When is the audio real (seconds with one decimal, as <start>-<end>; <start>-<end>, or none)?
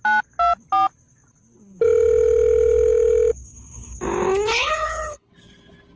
0.0-4.5; 5.3-6.0